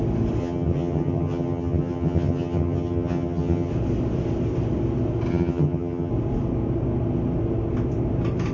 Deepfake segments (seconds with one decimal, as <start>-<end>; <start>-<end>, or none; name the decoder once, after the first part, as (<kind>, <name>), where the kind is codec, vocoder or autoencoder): 0.4-3.7 (vocoder, HiFi-GAN); 5.3-6.1

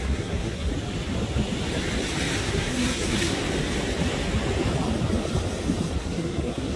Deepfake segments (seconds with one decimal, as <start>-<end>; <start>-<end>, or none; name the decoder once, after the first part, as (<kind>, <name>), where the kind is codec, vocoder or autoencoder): 0.0-0.7 (codec, SNAC); 2.4-3.4; 6.0-6.8

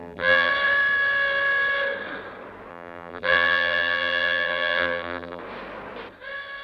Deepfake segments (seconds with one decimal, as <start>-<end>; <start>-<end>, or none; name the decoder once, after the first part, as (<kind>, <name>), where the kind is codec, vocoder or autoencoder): 0.0-0.5 (vocoder, BigVGAN v2); 2.7-5.4